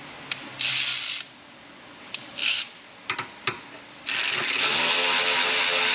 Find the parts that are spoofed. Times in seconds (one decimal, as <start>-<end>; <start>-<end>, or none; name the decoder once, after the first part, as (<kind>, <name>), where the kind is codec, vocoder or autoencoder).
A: none